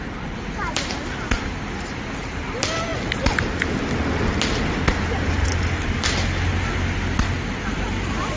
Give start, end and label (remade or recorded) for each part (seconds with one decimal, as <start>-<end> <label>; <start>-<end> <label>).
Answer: 0.0-8.4 recorded